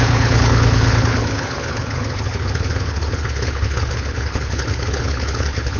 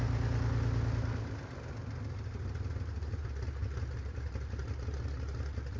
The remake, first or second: first